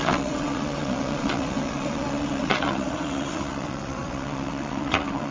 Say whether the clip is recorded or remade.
remade